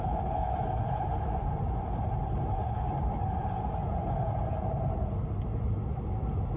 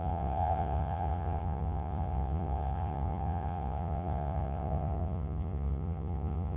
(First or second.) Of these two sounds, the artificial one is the second